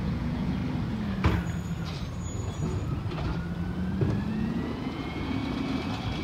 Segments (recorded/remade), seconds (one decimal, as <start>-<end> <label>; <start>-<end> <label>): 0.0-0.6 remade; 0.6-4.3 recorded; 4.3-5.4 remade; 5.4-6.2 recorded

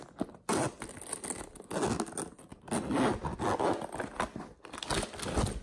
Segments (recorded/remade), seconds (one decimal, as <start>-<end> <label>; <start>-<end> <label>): 0.0-5.6 recorded

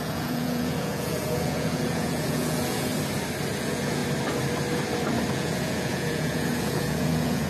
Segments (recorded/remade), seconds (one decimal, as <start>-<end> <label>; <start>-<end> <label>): 0.0-2.9 remade; 2.9-3.6 recorded; 3.6-4.0 remade; 4.0-5.3 recorded; 5.3-7.5 remade